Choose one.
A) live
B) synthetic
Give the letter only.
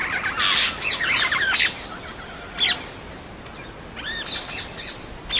A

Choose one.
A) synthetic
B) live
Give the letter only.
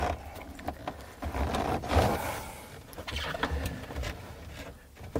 A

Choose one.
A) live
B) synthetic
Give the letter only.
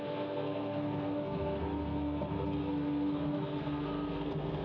B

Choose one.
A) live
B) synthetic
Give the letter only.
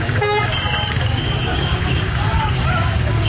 B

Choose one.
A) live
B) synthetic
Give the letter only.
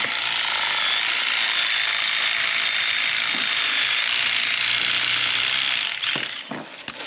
A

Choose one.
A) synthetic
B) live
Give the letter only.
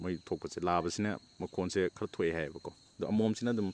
B